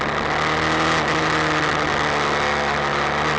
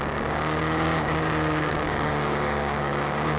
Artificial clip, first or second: second